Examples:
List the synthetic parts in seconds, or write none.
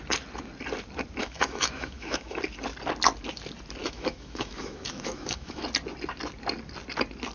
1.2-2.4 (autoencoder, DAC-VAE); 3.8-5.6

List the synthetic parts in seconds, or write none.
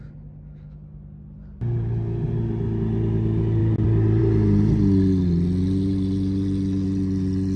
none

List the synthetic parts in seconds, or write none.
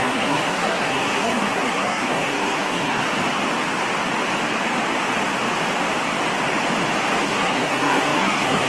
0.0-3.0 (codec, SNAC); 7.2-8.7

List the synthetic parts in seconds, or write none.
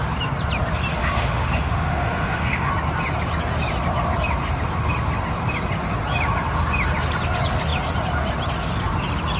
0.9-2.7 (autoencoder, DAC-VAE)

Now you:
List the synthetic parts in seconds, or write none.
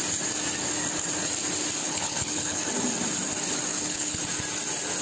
1.8-2.6 (codec, HILCodec); 3.7-4.2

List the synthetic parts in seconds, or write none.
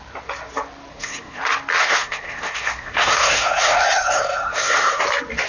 0.9-1.4 (codec, SNAC); 1.8-5.0